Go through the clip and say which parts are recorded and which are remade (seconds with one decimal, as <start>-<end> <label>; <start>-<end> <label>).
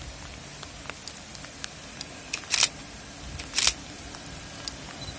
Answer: 0.0-5.2 recorded